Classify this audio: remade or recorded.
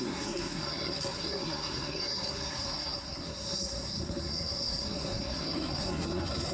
remade